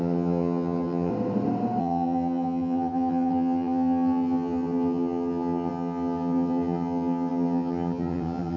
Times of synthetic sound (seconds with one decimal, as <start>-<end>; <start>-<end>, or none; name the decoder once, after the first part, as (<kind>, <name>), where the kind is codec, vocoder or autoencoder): 0.0-1.1 (vocoder, HiFi-GAN); 1.8-8.6